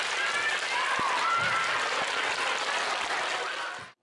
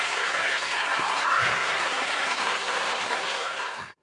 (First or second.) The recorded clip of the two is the first